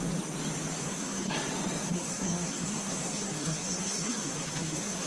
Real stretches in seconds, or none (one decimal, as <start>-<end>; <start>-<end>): 0.0-0.8; 1.3-1.8